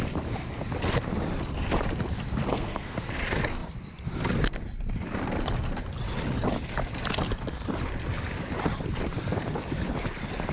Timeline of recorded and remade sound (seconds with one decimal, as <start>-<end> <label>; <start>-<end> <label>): 0.0-2.5 recorded; 2.5-3.0 remade; 3.0-10.5 recorded